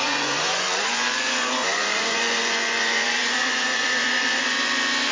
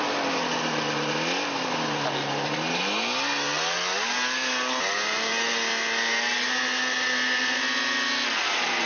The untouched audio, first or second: second